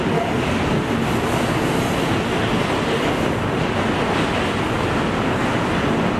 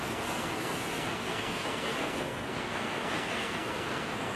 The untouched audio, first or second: first